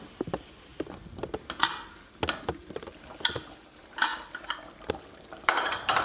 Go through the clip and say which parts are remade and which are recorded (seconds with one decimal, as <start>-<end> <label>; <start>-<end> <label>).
0.0-0.7 remade; 0.7-3.3 recorded; 3.3-4.1 remade; 4.1-4.9 recorded; 4.9-6.0 remade